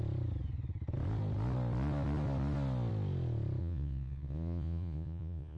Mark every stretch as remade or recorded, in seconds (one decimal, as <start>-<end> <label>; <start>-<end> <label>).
0.0-3.6 recorded; 3.6-5.6 remade